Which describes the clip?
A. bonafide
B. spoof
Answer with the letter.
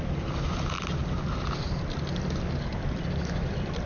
A